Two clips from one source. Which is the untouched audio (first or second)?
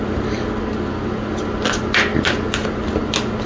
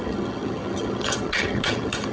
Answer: first